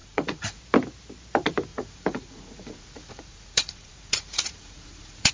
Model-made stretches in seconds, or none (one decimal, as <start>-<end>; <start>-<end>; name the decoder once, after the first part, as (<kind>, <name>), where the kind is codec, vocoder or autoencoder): 0.0-0.6 (vocoder, Vocos); 1.7-5.3